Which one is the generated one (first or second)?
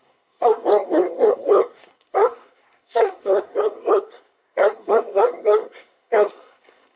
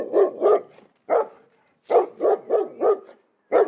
first